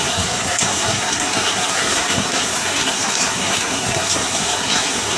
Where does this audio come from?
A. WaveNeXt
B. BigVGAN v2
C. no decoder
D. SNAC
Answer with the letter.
D